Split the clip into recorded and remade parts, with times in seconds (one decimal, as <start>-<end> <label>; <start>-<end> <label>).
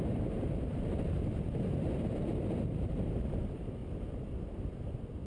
0.0-3.8 remade; 3.8-5.3 recorded